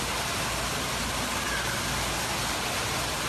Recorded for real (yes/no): yes